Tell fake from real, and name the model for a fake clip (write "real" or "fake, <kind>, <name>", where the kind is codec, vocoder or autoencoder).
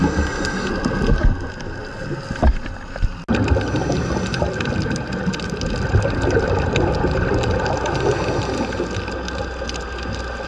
real